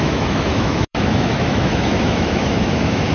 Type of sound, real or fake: fake